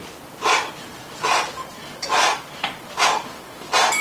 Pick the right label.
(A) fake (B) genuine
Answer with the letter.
B